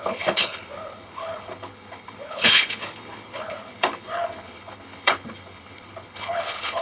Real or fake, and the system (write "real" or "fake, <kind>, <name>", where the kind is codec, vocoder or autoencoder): fake, codec, HILCodec